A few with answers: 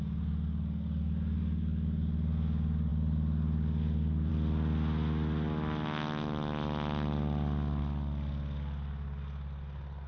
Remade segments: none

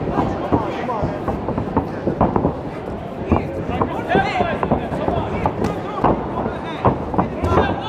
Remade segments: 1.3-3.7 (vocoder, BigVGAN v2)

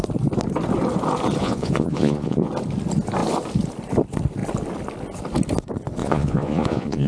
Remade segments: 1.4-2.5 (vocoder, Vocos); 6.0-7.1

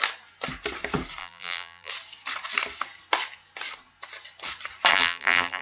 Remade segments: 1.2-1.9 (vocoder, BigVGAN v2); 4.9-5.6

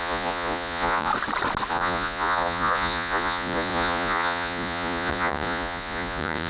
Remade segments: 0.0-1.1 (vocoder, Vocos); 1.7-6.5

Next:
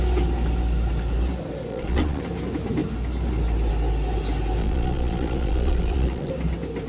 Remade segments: 1.7-2.2 (vocoder, Vocos); 4.6-6.3

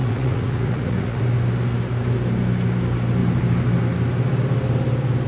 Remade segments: 0.0-1.2 (vocoder, Vocos)

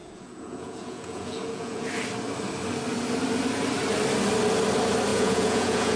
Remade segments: 0.0-1.9 (vocoder, Vocos); 5.1-6.0